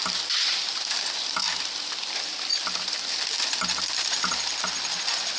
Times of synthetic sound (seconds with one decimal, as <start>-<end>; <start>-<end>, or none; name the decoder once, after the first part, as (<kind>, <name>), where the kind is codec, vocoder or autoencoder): none